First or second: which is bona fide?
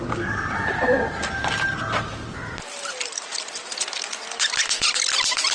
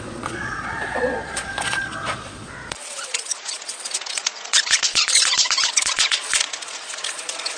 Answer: first